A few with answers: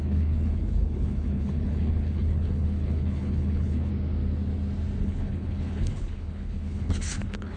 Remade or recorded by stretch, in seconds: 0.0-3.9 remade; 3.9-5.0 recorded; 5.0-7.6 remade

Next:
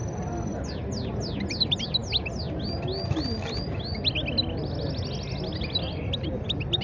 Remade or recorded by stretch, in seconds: 0.0-6.8 recorded

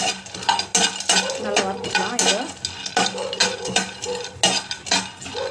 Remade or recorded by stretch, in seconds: 0.0-3.4 recorded; 3.4-4.4 remade; 4.4-5.5 recorded

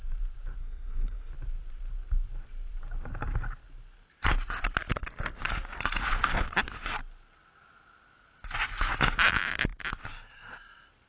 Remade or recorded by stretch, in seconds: 0.0-0.6 recorded; 0.6-1.3 remade; 1.3-11.1 recorded

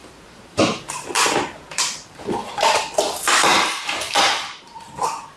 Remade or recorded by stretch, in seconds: 0.0-1.1 remade; 1.1-1.7 recorded; 1.7-2.8 remade; 2.8-3.5 recorded; 3.5-4.1 remade; 4.1-5.4 recorded

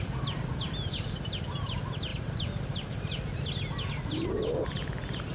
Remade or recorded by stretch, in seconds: 0.0-5.3 recorded